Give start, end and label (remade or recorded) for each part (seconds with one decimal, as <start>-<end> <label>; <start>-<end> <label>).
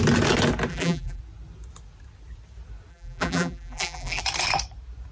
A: 0.0-0.7 recorded; 0.7-1.2 remade; 1.2-2.9 recorded; 2.9-4.2 remade; 4.2-5.1 recorded